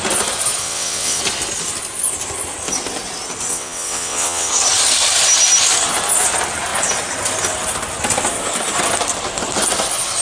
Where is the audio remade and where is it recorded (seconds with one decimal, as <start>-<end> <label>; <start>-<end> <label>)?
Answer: 0.0-0.6 recorded; 0.6-1.2 remade; 1.2-3.5 recorded; 3.5-4.5 remade; 4.5-10.2 recorded